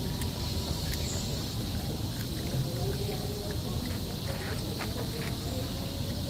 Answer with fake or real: real